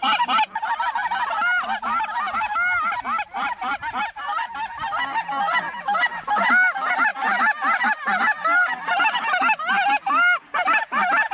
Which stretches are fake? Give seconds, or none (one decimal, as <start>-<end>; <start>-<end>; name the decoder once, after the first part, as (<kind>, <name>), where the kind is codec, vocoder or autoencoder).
none

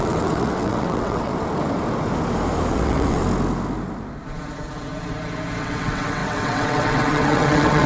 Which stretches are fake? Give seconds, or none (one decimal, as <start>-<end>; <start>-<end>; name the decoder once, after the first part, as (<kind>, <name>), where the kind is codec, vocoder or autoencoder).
0.0-1.3 (vocoder, WaveNeXt); 2.7-3.2; 5.6-7.9

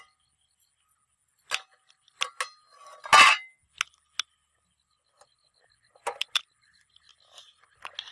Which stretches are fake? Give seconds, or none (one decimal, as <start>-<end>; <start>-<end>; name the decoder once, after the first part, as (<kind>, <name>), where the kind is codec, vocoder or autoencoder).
none

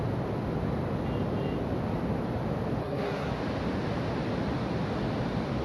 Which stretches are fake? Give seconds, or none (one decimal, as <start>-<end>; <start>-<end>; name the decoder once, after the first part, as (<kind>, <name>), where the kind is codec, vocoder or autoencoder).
2.8-3.3 (codec, SNAC)

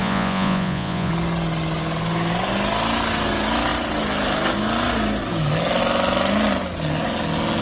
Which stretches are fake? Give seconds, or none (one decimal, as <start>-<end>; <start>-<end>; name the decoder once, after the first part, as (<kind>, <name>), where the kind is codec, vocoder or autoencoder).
0.0-1.1 (vocoder, Vocos)

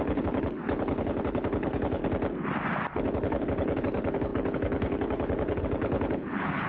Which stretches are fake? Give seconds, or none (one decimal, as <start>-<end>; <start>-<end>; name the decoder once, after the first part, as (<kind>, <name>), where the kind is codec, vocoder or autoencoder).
0.0-2.0 (codec, HILCodec); 2.9-6.7